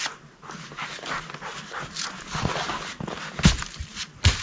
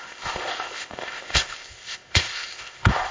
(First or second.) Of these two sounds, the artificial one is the second